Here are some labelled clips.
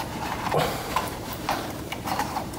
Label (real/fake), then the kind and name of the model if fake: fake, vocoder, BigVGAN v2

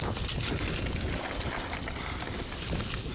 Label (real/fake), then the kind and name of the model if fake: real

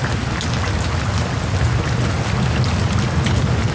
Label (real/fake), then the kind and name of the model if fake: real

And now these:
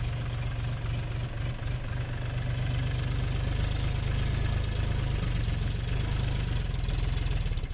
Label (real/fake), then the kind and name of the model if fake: real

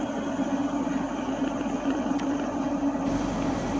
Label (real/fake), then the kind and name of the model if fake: real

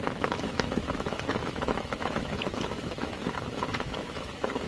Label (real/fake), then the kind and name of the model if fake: fake, autoencoder, DAC-VAE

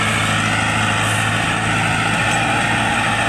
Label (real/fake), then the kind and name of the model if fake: real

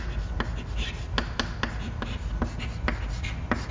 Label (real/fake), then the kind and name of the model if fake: real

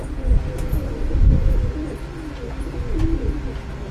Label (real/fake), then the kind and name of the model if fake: real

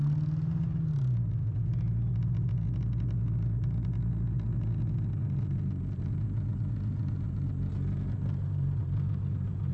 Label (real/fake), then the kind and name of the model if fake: real